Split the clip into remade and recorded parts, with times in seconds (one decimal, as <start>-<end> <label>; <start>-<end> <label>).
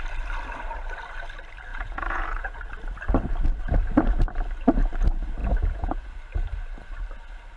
0.0-1.7 recorded; 1.7-2.6 remade; 2.6-5.4 recorded; 5.4-6.1 remade; 6.1-7.6 recorded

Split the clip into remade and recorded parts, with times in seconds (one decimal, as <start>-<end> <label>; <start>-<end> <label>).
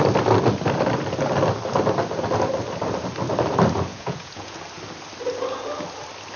0.0-3.9 recorded; 3.9-4.6 remade; 4.6-6.4 recorded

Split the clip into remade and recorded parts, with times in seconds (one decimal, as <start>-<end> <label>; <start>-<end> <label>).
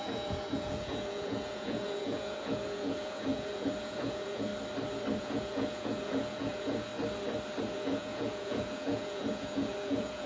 0.0-4.5 remade; 4.5-5.2 recorded; 5.2-6.9 remade; 6.9-7.6 recorded; 7.6-10.3 remade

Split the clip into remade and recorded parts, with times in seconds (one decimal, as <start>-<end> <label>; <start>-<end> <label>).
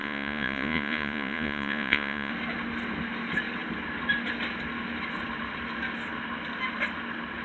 0.0-2.3 remade; 2.3-7.4 recorded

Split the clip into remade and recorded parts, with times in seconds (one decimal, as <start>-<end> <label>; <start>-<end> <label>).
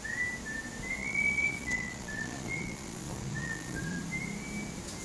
0.0-1.0 recorded; 1.0-4.0 remade; 4.0-5.0 recorded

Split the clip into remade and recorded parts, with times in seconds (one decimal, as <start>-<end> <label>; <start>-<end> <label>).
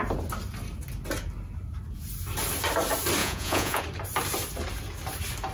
0.0-3.2 recorded; 3.2-3.8 remade; 3.8-5.5 recorded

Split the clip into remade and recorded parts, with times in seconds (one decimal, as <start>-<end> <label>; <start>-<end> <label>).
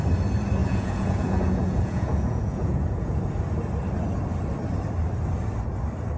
0.0-0.6 recorded; 0.6-3.2 remade; 3.2-6.2 recorded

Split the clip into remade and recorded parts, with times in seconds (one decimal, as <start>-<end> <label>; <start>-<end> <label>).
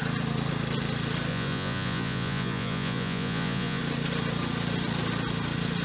0.0-1.3 recorded; 1.3-3.8 remade; 3.8-5.8 recorded